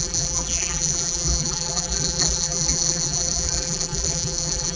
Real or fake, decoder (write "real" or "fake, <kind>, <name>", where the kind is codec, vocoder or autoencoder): fake, vocoder, BigVGAN v2